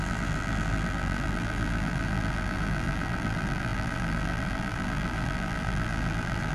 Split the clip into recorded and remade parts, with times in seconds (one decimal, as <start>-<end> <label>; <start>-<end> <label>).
0.0-6.5 remade